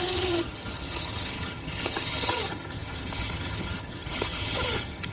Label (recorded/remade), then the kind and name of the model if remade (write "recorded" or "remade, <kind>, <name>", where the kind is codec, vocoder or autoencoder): remade, vocoder, HiFi-GAN